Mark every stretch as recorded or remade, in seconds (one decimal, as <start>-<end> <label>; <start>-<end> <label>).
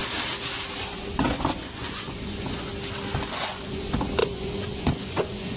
0.0-0.8 recorded; 0.8-2.7 remade; 2.7-3.3 recorded; 3.3-5.6 remade